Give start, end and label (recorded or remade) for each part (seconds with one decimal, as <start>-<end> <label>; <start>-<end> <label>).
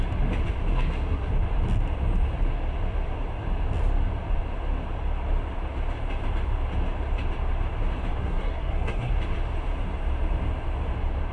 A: 0.0-0.7 recorded; 0.7-1.3 remade; 1.3-8.2 recorded; 8.2-9.1 remade; 9.1-11.3 recorded